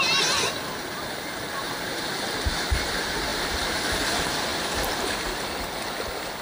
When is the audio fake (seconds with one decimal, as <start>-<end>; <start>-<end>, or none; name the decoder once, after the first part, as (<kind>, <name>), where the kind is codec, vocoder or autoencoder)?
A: none